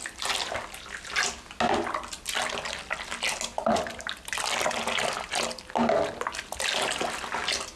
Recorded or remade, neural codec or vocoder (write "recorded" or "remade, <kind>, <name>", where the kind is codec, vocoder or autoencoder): recorded